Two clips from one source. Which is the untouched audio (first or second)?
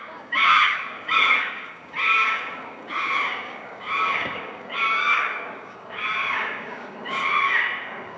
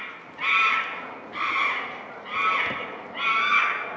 second